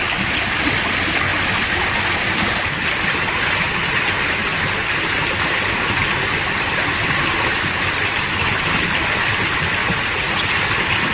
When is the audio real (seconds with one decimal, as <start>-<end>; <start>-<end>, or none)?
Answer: 0.0-9.8; 10.6-11.1